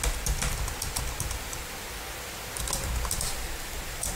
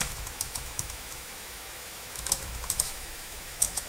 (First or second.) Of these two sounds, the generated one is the second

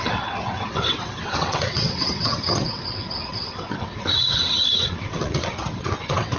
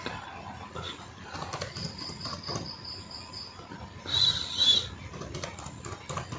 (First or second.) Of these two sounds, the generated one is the first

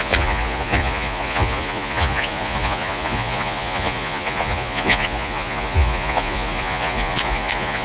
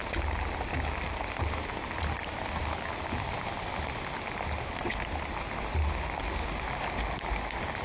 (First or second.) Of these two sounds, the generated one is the first